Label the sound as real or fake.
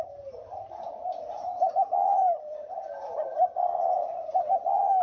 fake